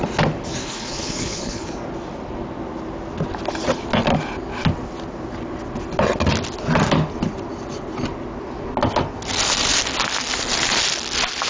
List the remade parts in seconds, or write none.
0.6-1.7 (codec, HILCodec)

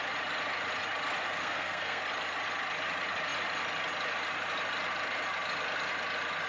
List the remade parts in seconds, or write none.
1.4-2.0 (codec, SNAC)